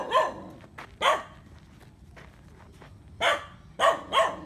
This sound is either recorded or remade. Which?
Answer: recorded